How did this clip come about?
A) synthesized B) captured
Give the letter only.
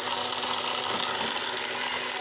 B